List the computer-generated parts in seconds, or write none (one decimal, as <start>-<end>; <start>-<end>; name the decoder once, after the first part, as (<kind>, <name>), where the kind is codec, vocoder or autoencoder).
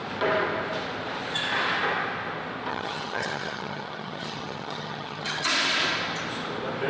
2.7-5.5 (vocoder, HiFi-GAN)